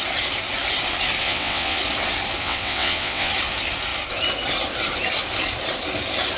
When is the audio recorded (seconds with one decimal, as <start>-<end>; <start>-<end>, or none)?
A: 0.0-1.2; 1.8-2.4; 3.3-6.4